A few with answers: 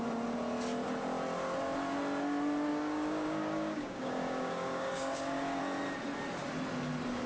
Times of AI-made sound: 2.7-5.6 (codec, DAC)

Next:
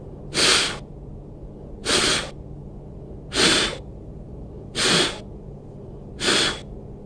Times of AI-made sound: none

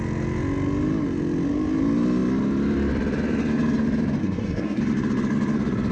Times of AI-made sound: 4.2-4.8 (codec, SNAC)